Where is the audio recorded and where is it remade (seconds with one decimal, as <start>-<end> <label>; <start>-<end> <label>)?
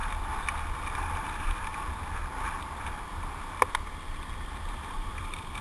0.0-0.9 recorded; 0.9-1.7 remade; 1.7-5.1 recorded; 5.1-5.6 remade